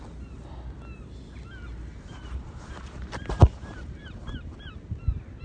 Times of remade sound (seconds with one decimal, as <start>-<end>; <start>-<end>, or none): 1.9-5.0